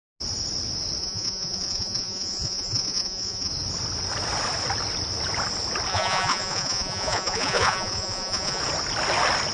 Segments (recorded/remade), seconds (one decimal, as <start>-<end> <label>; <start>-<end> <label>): 0.0-1.0 recorded; 1.0-3.5 remade; 3.5-5.9 recorded; 5.9-8.6 remade; 8.6-9.5 recorded